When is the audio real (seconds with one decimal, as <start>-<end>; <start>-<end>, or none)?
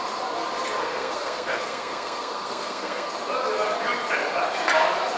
0.0-0.8; 3.1-5.2